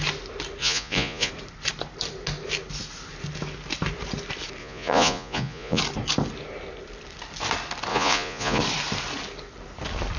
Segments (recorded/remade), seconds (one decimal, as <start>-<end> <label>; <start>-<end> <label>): 0.0-0.6 recorded; 0.6-1.3 remade; 1.3-4.6 recorded; 4.6-5.8 remade; 5.8-7.9 recorded; 7.9-8.6 remade; 8.6-10.2 recorded